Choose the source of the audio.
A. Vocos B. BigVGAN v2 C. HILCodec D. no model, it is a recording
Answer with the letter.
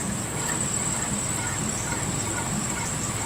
B